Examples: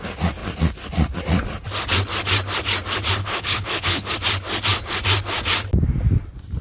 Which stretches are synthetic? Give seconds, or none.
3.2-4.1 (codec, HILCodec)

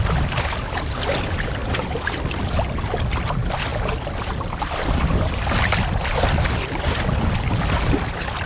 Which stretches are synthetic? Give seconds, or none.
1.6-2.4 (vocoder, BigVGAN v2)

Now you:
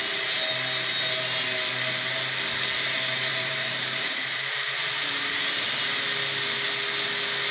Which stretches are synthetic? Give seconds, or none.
3.3-5.9 (vocoder, BigVGAN v2)